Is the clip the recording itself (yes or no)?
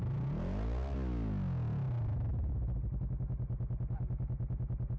yes